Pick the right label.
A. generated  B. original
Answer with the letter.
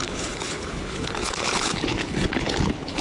A